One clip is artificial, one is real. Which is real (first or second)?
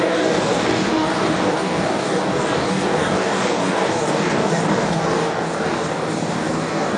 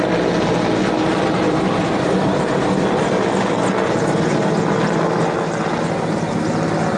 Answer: second